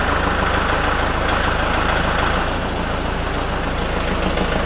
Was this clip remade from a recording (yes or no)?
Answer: no